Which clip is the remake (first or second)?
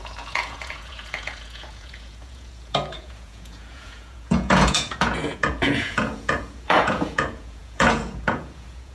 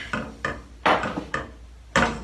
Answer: first